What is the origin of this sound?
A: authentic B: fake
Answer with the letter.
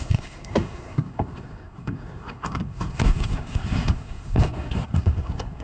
B